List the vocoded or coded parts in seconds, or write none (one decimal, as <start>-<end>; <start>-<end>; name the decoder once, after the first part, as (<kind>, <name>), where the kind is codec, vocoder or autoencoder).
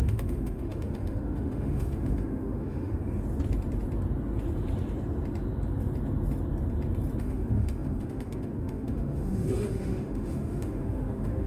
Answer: 0.0-3.0 (autoencoder, DAC-VAE); 7.2-11.5